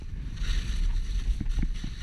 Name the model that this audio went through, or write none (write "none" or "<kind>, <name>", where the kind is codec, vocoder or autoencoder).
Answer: none